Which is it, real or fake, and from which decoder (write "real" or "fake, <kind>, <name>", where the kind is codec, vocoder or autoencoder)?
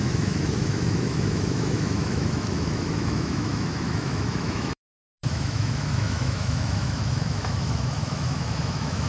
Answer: fake, autoencoder, DAC-VAE